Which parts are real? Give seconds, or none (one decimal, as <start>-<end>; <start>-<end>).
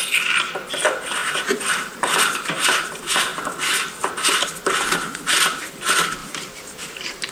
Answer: 0.0-1.2; 2.9-6.2